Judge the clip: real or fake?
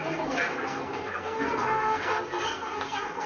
fake